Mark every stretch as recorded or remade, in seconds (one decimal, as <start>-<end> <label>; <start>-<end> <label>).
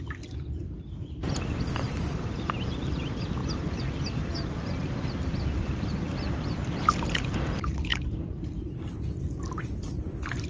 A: 0.0-10.5 recorded